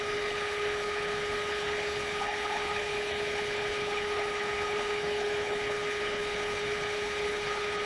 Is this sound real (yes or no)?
no